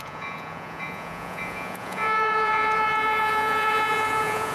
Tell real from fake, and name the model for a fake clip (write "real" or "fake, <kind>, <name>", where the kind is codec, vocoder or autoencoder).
fake, vocoder, Vocos